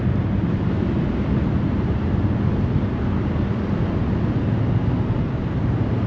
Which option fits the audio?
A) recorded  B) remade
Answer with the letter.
A